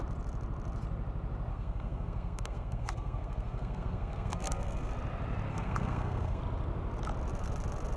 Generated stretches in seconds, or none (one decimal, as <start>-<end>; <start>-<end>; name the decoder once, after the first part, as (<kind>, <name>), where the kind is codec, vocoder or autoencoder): 1.5-4.9 (codec, SNAC); 5.5-6.4